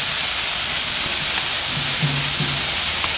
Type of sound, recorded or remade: recorded